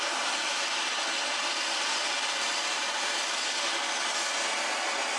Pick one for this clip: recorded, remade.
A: recorded